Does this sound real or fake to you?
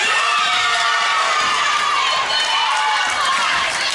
fake